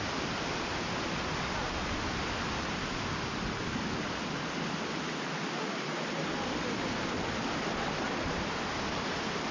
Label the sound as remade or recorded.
recorded